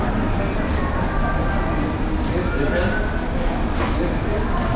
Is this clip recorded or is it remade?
recorded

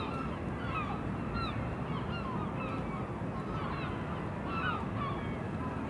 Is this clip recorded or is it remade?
recorded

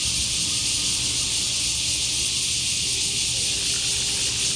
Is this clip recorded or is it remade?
recorded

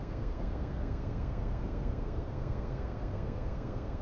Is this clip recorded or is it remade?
remade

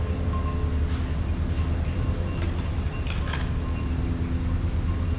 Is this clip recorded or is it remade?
recorded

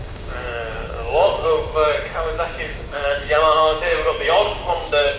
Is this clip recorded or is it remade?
remade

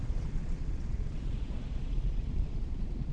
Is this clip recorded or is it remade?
remade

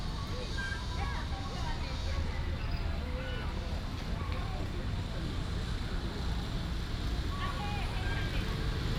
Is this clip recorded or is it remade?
recorded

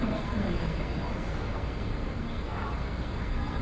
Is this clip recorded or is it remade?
remade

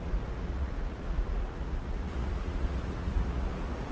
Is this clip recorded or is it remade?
remade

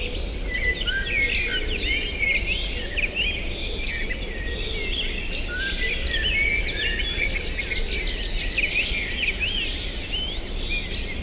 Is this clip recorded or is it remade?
recorded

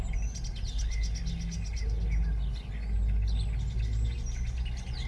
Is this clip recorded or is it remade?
recorded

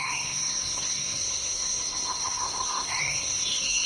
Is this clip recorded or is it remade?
remade